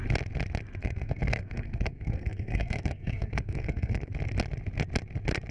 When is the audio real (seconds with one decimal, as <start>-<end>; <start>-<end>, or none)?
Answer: 0.0-0.8; 4.1-5.5